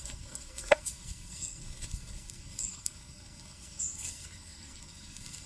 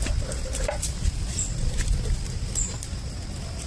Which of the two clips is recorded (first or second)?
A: second